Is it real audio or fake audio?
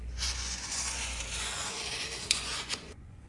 fake